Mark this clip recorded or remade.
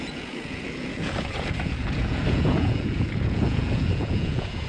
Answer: remade